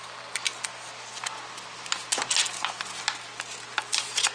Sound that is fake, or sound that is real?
real